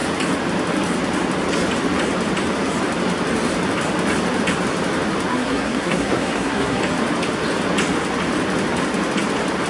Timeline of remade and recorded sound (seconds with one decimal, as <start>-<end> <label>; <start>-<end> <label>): 0.0-5.3 recorded; 5.3-6.8 remade; 6.8-9.7 recorded

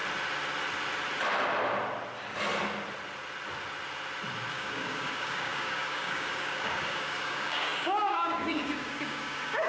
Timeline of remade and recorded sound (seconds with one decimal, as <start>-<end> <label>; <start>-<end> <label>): 0.0-4.5 recorded; 4.5-9.7 remade

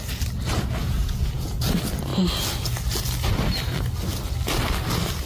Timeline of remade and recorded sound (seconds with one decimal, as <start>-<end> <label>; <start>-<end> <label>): 0.0-0.8 recorded; 0.8-1.6 remade; 1.6-5.3 recorded

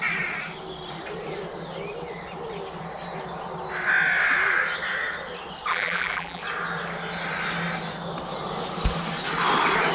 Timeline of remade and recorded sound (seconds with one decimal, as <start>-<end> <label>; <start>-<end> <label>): 0.0-5.7 recorded; 5.7-6.4 remade; 6.4-9.9 recorded